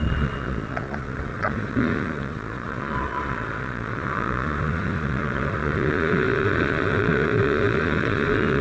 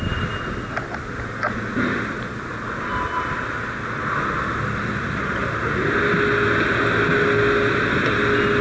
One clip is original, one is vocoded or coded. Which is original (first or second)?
second